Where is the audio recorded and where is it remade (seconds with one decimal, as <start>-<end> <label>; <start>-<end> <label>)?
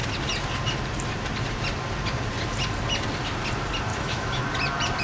0.0-3.9 recorded; 3.9-4.4 remade; 4.4-5.0 recorded